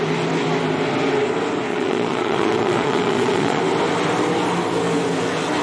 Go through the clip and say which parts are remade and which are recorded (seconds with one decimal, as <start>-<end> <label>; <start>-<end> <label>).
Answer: 0.0-1.7 recorded; 1.7-3.6 remade; 3.6-5.6 recorded